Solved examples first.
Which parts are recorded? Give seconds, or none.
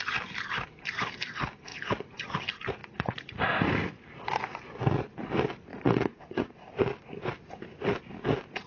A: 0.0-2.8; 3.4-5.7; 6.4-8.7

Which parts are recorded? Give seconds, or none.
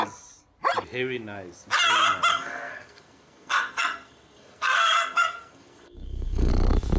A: 0.0-2.3; 6.5-7.0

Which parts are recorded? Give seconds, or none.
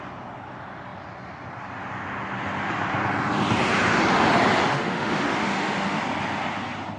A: 0.0-4.7; 6.0-7.0